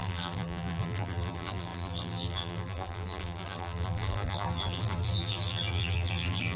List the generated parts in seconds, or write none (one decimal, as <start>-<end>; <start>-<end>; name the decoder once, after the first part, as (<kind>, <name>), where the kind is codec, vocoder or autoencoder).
0.0-6.6 (vocoder, BigVGAN v2)

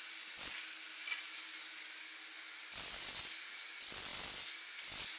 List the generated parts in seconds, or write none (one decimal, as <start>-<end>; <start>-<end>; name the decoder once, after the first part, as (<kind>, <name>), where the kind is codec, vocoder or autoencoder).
none

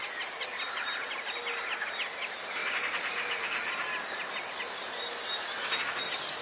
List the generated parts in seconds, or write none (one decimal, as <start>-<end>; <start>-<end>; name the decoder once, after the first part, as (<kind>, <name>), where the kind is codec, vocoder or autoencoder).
2.6-3.7 (vocoder, BigVGAN v2)